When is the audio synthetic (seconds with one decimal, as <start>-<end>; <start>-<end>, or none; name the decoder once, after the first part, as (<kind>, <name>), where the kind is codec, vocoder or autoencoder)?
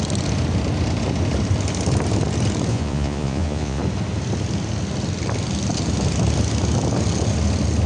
2.7-3.8 (vocoder, Vocos)